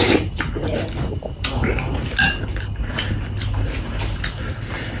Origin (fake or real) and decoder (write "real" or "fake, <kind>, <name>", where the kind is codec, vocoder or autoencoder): real